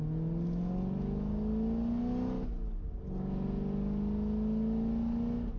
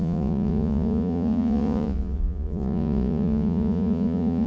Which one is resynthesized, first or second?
second